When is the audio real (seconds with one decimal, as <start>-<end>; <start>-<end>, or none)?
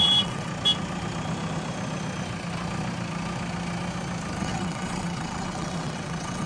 0.5-4.4